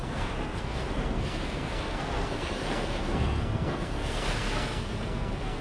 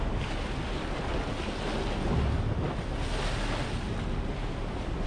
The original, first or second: second